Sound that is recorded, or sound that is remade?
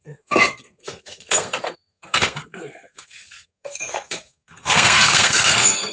remade